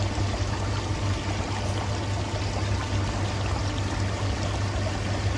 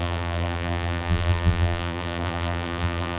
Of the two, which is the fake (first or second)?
second